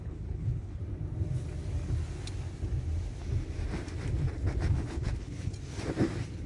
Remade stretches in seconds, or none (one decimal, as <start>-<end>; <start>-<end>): 0.0-0.8; 4.7-5.5